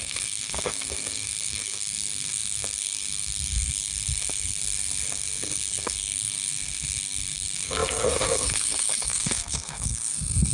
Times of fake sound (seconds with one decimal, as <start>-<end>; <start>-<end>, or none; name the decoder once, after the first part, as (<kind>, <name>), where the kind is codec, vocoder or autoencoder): 0.0-10.5 (codec, SNAC)